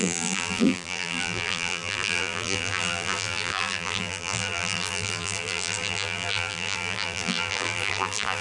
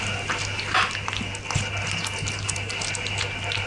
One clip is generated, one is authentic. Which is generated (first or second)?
first